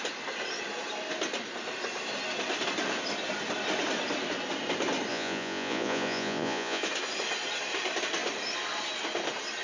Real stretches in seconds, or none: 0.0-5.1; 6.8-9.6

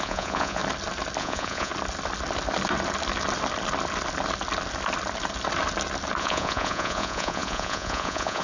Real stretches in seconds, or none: 0.6-1.2; 1.7-6.2

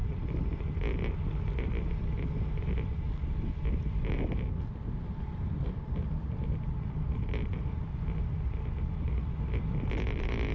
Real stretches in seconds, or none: 0.0-10.5